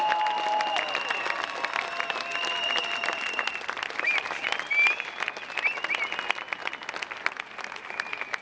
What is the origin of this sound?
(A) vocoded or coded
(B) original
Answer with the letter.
B